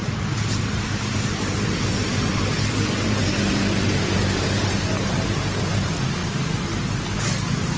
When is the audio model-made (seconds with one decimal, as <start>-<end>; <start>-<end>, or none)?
0.0-7.8